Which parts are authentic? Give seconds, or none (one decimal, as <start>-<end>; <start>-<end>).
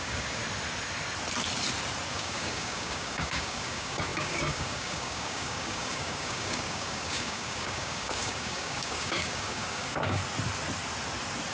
0.4-2.1; 10.2-11.5